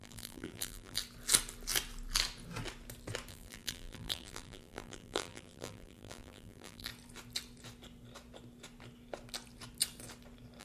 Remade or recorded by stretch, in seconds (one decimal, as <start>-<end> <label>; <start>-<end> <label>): 0.0-1.0 remade; 1.0-3.3 recorded; 3.3-6.9 remade; 6.9-10.6 recorded